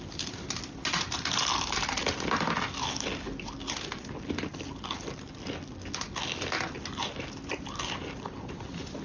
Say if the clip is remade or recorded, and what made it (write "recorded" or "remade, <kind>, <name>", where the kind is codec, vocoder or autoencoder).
recorded